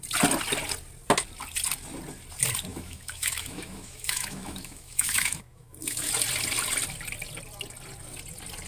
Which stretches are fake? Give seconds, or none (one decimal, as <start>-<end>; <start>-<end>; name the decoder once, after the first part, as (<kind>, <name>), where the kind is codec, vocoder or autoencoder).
2.7-6.1 (autoencoder, DAC-VAE)